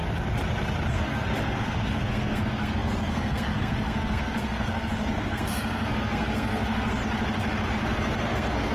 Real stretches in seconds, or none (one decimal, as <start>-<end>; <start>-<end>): 0.0-0.9; 7.0-7.7